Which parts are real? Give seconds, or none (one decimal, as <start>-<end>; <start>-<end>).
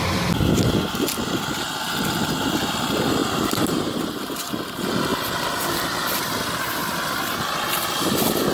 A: 0.0-3.2; 4.5-8.5